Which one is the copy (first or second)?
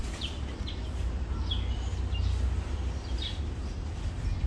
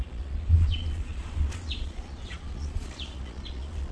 second